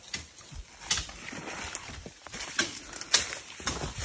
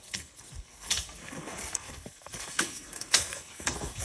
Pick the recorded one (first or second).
first